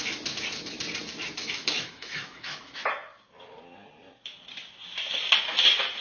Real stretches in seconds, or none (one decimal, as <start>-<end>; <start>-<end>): 0.0-1.4; 2.9-6.0